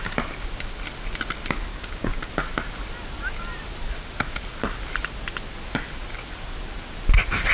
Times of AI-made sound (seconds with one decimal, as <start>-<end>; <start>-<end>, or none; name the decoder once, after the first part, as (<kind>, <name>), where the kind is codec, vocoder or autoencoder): 1.7-2.3 (codec, DAC)